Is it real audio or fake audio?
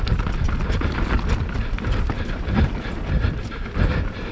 fake